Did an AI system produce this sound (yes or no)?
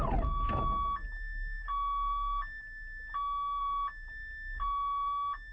no